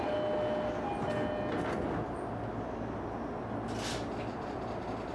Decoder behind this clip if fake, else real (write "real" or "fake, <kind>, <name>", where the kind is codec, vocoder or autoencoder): real